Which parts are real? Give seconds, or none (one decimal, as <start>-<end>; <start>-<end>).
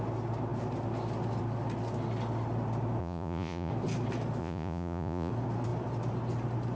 0.0-3.0; 3.7-4.4; 5.3-6.8